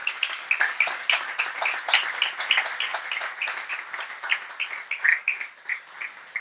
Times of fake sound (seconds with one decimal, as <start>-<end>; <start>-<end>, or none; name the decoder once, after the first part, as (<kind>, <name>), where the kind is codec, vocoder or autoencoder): 0.0-1.4 (codec, DAC); 5.1-5.7